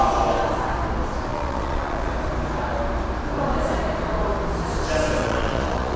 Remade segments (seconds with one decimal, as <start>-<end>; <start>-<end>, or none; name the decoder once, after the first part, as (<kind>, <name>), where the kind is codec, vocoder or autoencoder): 1.3-2.1 (vocoder, Vocos); 5.2-6.0